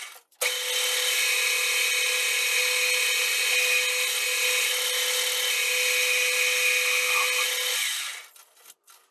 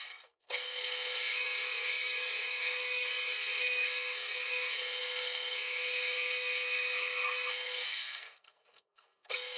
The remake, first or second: second